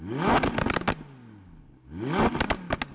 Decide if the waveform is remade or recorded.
recorded